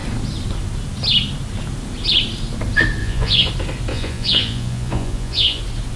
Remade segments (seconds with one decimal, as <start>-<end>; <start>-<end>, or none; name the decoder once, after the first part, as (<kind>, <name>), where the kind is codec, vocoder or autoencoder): 3.0-3.5 (vocoder, Vocos); 3.9-5.6